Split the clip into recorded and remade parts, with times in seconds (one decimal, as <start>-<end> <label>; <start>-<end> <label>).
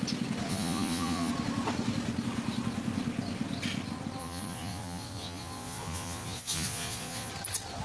0.0-0.5 recorded; 0.5-1.3 remade; 1.3-4.2 recorded; 4.2-7.3 remade; 7.3-7.8 recorded